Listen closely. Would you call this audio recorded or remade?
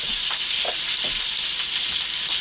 recorded